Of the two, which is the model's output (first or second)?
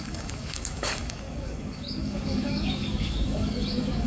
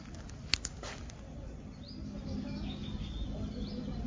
first